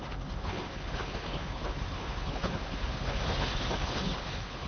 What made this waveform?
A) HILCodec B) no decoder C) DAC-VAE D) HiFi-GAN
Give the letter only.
A